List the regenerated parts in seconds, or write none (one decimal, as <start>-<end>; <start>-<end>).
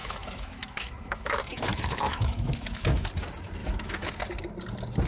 0.0-3.1; 3.6-4.2